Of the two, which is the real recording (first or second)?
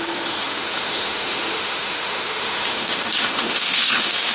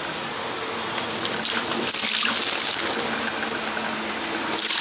second